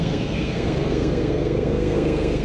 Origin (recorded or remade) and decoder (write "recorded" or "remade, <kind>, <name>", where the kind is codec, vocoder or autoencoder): remade, codec, SNAC